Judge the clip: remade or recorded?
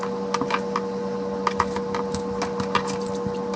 recorded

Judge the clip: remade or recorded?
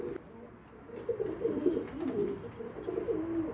recorded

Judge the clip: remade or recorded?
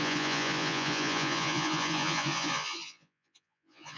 remade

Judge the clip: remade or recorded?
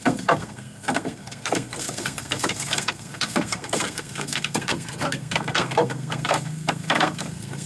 remade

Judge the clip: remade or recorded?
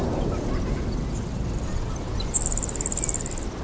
recorded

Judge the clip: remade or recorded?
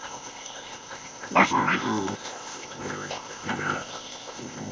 remade